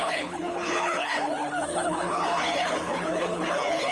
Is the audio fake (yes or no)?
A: yes